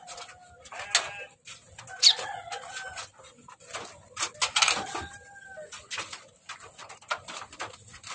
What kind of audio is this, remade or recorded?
recorded